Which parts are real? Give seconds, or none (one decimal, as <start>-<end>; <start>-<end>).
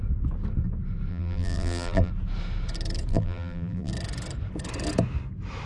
0.0-1.1; 2.1-3.1; 3.9-5.7